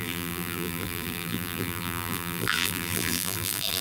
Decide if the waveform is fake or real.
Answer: fake